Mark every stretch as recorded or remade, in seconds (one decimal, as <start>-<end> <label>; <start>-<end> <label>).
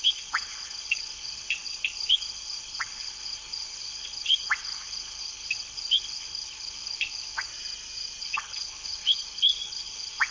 0.0-7.5 remade; 7.5-8.2 recorded; 8.2-10.3 remade